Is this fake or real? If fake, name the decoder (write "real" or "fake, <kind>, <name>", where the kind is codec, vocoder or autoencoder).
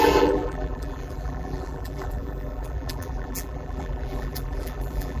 fake, vocoder, BigVGAN v2